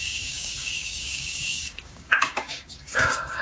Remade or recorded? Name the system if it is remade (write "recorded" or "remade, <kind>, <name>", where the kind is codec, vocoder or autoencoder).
remade, codec, DAC